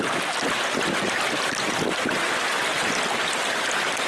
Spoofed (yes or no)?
no